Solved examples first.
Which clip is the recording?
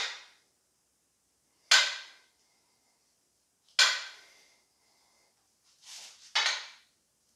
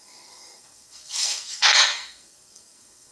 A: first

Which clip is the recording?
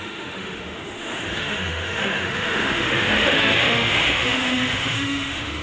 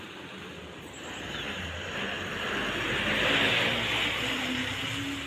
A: second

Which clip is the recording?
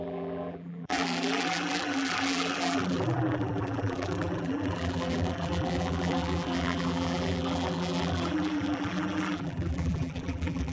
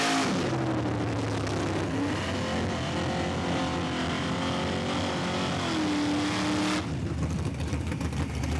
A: second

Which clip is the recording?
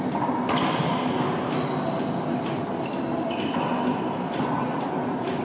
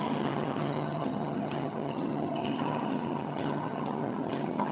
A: first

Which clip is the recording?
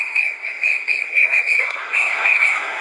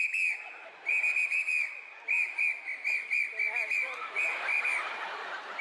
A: second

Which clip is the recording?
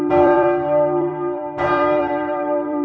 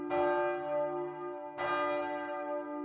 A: second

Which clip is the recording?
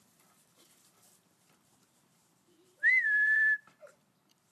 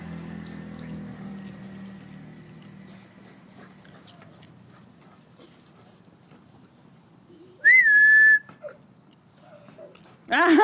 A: second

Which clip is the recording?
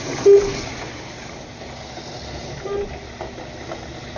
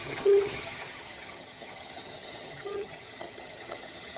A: first